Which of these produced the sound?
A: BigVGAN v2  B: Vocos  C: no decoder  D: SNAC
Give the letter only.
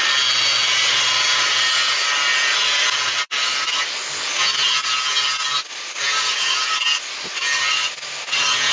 C